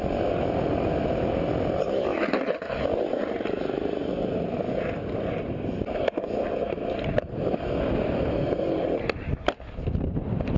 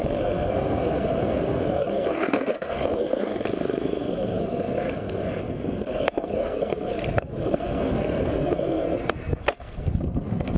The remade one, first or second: second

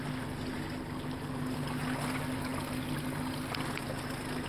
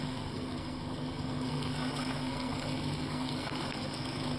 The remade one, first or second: second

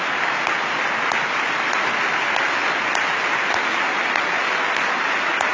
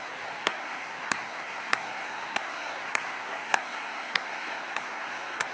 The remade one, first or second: second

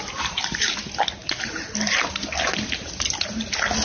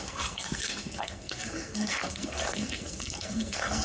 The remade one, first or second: second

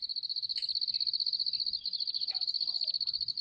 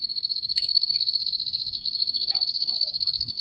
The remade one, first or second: second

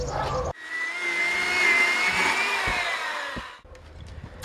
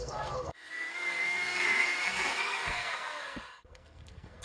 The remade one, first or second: second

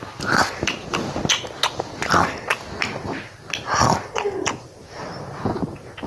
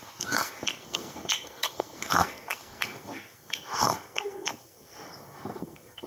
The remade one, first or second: second